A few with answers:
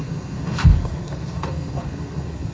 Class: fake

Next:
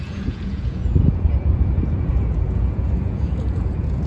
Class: fake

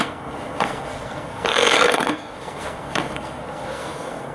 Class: fake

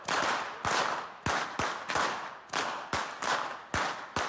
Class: real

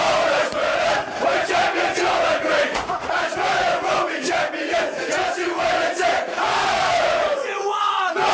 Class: fake